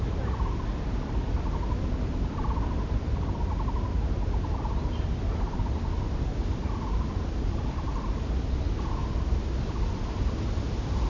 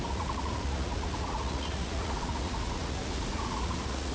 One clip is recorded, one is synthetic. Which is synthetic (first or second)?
second